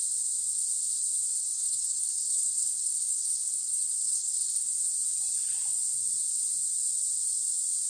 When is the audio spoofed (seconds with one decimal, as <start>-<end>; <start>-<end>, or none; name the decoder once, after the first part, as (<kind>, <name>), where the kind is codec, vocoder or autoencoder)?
1.4-4.8 (codec, HILCodec)